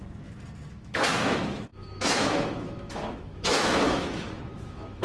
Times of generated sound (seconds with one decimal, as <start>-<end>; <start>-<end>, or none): 0.7-5.0